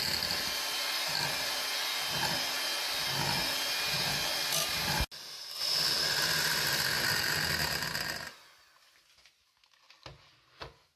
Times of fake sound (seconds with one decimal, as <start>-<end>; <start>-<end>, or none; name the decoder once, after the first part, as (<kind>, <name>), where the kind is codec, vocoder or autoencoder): none